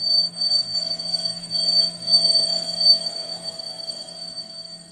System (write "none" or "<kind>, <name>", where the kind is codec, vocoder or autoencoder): codec, SNAC